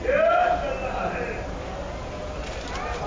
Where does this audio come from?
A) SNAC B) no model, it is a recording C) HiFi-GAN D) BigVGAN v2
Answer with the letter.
B